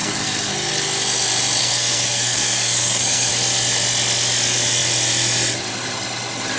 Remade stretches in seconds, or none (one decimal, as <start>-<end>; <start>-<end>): 0.0-0.7; 1.6-3.3

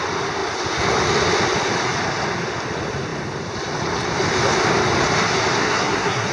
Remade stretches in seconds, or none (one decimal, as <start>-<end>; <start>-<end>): 5.6-6.3

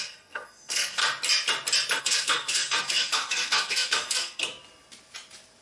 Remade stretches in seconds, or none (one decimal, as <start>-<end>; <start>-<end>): 0.0-1.0; 2.0-4.4

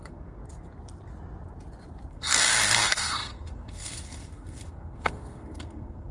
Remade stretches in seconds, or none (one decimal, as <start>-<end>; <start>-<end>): 0.0-0.4; 2.1-6.1

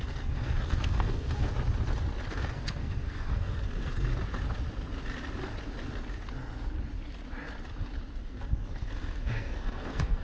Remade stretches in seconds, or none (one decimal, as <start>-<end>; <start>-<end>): 0.0-1.5; 2.3-4.1; 8.2-10.2